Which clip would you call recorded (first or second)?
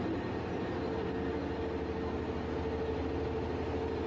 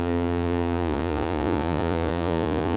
first